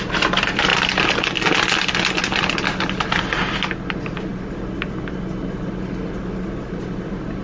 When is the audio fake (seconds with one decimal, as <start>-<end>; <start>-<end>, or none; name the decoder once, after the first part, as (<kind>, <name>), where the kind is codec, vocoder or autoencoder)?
none